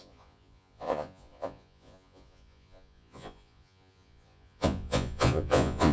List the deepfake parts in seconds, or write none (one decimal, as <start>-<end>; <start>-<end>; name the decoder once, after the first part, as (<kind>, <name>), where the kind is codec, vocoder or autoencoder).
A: 0.0-5.9 (vocoder, Vocos)